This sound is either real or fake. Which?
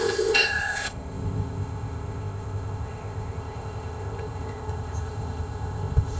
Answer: fake